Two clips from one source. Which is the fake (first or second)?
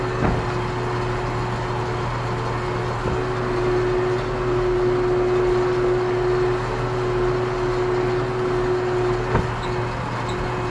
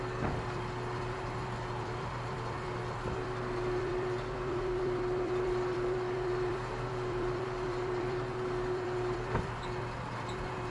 second